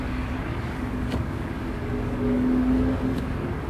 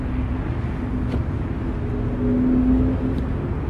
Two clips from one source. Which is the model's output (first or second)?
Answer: first